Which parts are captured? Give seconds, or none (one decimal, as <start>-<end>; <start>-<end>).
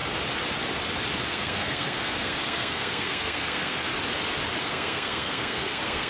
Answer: 0.0-1.3; 3.9-4.6